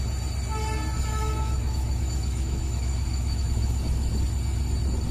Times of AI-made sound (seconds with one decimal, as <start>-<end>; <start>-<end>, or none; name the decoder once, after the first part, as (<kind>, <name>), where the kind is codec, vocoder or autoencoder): 1.1-4.2 (autoencoder, DAC-VAE)